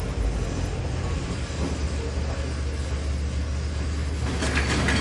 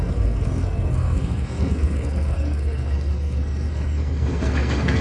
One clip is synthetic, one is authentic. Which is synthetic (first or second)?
second